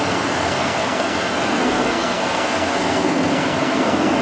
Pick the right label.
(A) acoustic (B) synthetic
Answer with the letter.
B